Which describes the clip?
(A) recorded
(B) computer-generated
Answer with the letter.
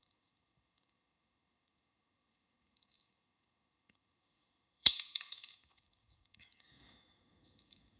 B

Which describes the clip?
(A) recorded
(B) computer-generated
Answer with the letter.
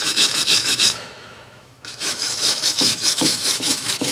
B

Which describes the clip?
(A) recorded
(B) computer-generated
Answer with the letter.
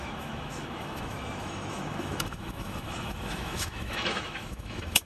B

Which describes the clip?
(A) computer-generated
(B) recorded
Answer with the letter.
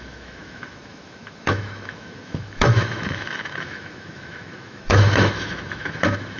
A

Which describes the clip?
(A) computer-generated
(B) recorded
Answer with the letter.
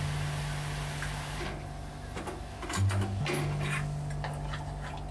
B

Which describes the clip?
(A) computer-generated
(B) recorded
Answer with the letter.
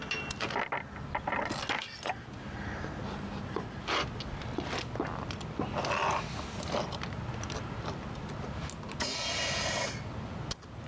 B